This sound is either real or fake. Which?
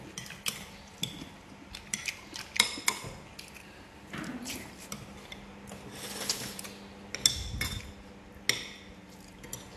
real